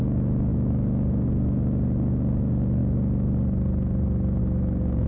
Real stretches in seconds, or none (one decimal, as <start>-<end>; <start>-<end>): 0.0-5.1